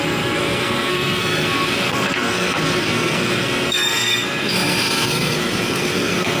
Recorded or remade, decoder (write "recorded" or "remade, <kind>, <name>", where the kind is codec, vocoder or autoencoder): remade, codec, SNAC